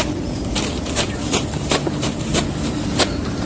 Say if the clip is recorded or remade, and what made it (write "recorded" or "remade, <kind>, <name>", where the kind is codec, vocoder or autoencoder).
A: remade, vocoder, BigVGAN v2